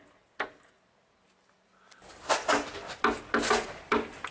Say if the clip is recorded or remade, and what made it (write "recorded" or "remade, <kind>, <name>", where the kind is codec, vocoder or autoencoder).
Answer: recorded